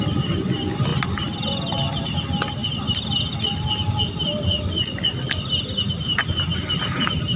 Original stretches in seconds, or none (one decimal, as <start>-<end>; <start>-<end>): 0.0-7.4